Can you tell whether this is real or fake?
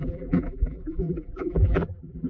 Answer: fake